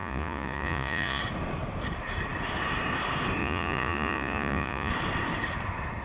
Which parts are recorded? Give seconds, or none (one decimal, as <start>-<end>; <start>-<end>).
1.2-3.4; 4.9-6.0